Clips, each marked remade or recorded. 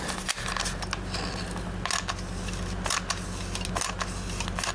recorded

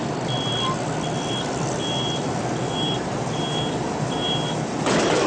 recorded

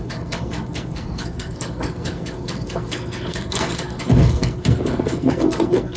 remade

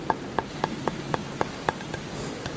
recorded